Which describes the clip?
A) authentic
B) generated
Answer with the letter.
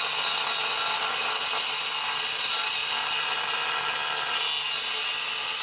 A